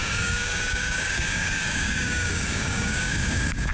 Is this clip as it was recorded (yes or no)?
no